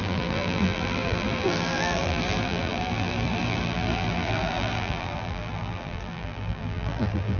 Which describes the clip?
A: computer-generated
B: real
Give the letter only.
A